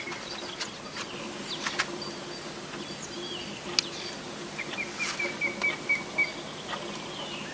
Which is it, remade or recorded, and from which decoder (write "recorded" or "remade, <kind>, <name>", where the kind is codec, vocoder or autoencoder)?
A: recorded